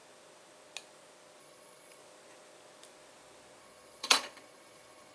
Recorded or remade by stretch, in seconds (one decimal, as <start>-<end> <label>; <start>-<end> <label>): 0.0-1.4 recorded; 1.4-2.0 remade; 2.0-3.6 recorded; 3.6-5.1 remade